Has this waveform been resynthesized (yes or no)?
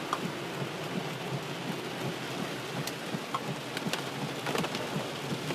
no